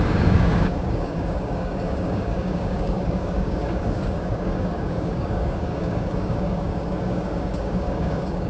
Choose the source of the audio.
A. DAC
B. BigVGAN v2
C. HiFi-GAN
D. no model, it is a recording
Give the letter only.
A